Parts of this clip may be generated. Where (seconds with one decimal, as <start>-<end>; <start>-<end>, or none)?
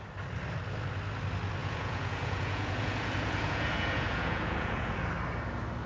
1.6-5.1